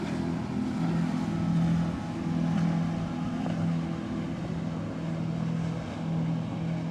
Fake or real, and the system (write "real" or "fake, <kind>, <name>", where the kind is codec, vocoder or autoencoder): real